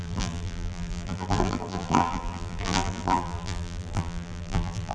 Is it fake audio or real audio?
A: fake